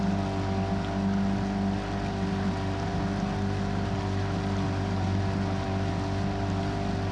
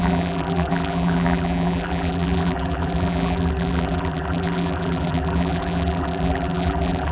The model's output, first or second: second